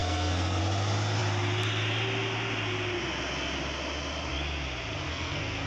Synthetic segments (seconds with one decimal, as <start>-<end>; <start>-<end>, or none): 0.0-0.6; 5.1-5.7